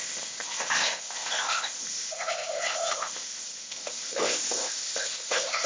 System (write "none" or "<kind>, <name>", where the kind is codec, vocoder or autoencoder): codec, ZipCodec